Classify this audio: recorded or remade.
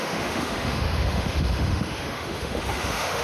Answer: remade